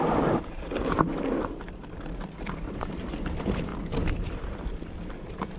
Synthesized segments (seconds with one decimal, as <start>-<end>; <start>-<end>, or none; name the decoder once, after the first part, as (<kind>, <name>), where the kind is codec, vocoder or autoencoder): 0.0-3.7 (vocoder, BigVGAN v2); 4.5-5.6

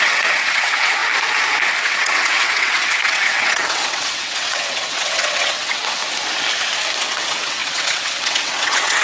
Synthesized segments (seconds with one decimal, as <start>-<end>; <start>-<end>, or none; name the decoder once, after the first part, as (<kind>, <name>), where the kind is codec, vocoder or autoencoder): 0.0-1.0 (vocoder, WaveNeXt); 1.8-6.0; 7.0-9.0

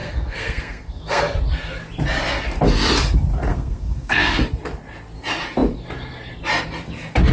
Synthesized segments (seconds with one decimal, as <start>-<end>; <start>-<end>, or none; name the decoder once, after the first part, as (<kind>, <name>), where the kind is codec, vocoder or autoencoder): 0.0-1.2 (codec, SNAC); 3.5-4.4